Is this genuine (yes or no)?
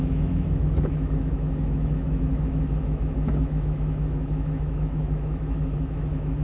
no